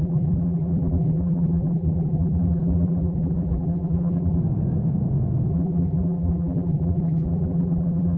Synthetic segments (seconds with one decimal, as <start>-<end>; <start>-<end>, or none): 0.0-4.4; 5.5-8.2